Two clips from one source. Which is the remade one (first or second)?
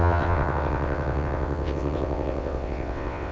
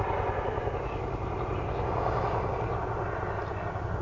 first